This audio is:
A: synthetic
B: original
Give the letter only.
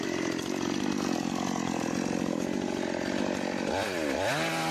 B